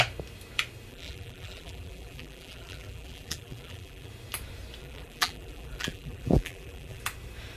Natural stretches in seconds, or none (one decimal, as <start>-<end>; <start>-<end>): 0.0-0.9; 4.1-4.8; 7.0-7.6